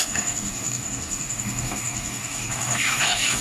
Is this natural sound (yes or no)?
no